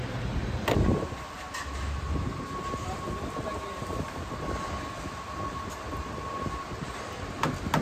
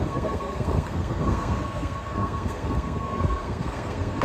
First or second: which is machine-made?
second